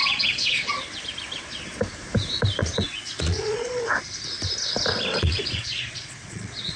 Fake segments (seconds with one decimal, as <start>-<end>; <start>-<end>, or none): 0.0-0.7; 2.6-3.8; 5.1-6.8